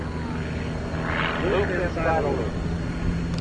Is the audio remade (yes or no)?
no